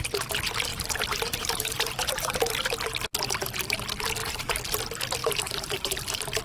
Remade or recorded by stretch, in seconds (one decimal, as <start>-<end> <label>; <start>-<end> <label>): 0.0-0.7 recorded; 0.7-2.6 remade; 2.6-4.2 recorded; 4.2-4.8 remade; 4.8-5.2 recorded; 5.2-6.4 remade